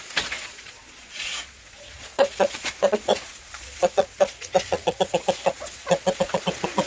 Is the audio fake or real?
fake